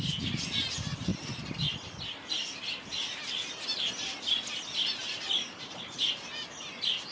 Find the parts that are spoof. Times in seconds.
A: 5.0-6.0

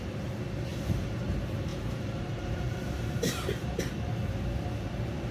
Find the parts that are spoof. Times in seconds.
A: 0.7-1.2; 1.7-3.8

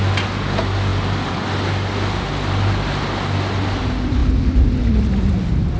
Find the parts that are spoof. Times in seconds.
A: none